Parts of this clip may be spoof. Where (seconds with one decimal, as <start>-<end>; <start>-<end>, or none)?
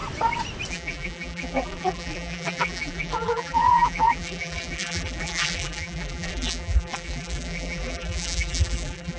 0.7-9.2